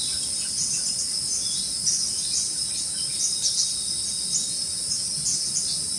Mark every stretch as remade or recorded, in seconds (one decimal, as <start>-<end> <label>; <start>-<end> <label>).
0.0-6.0 recorded